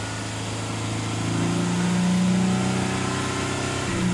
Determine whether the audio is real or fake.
real